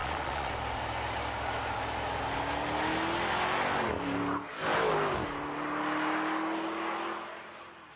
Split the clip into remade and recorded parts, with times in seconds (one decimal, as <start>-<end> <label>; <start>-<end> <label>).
0.0-0.5 remade; 0.5-8.0 recorded